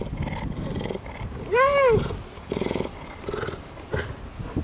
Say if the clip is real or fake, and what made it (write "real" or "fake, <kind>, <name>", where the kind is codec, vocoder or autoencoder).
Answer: real